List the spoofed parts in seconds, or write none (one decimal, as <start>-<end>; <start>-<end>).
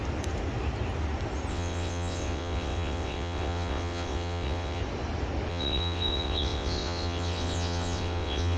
1.5-4.8; 5.5-8.6